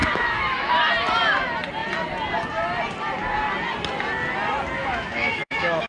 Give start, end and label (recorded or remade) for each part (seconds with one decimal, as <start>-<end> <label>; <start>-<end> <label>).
0.0-0.7 remade; 0.7-4.8 recorded; 4.8-5.9 remade